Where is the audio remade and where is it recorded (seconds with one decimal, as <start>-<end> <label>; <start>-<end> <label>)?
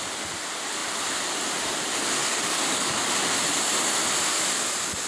0.0-2.2 recorded; 2.2-3.1 remade; 3.1-5.1 recorded